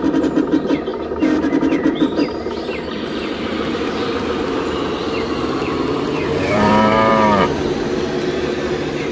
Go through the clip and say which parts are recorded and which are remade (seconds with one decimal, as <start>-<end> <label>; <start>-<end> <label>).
0.0-0.9 recorded; 0.9-5.1 remade; 5.1-5.6 recorded; 5.6-7.1 remade; 7.1-9.1 recorded